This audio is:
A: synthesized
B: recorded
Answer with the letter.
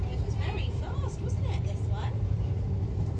A